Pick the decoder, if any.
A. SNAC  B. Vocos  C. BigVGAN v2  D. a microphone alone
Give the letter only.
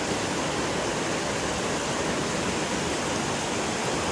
D